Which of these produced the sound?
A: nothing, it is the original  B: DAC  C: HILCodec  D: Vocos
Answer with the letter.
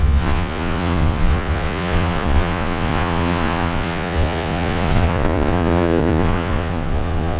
D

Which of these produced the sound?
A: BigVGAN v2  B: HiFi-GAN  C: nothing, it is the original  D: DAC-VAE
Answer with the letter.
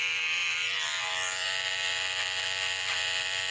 A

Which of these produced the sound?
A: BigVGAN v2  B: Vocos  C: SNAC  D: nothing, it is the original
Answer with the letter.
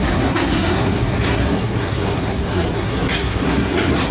C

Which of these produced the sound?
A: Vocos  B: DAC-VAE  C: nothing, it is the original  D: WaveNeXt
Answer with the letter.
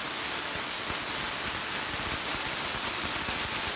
C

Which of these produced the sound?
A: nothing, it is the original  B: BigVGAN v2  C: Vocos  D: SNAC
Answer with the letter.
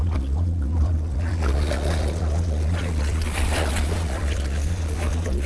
C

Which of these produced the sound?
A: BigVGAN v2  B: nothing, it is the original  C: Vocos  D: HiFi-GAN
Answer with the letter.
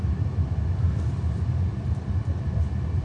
A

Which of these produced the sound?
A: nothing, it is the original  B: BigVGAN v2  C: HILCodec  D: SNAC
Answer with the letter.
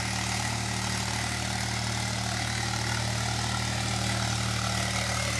A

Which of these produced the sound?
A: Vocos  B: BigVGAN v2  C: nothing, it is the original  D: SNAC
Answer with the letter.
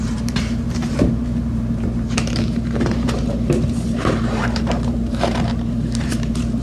B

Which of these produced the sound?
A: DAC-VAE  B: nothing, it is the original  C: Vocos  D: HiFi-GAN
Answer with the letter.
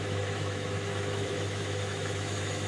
A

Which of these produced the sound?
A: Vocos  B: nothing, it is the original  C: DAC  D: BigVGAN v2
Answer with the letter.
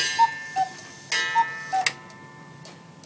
B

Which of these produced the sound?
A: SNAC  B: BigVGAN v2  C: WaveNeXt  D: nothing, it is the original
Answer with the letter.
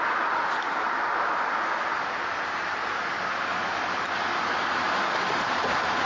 D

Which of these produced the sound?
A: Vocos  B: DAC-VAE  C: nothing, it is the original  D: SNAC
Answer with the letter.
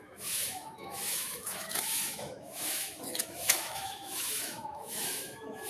B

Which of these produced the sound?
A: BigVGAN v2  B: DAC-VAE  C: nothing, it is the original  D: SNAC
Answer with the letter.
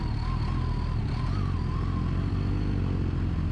C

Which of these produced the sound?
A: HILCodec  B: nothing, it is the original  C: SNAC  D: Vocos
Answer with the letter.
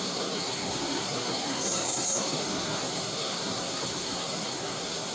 C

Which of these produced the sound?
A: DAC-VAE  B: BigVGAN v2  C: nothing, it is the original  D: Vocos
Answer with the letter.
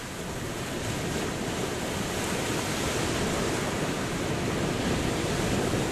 C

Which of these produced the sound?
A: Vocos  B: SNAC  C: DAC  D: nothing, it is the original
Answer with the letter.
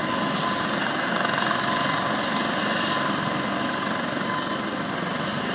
D